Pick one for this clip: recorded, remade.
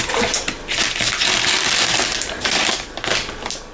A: recorded